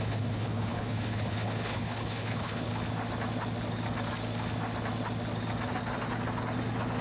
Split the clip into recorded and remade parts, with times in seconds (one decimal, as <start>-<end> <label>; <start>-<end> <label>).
0.0-2.7 remade; 2.7-7.0 recorded